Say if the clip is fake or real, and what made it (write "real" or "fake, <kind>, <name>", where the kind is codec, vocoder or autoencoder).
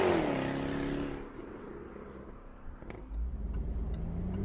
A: real